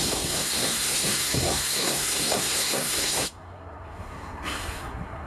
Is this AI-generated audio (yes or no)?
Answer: yes